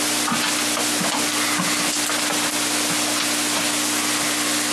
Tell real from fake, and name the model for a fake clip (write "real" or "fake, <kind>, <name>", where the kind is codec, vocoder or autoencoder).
real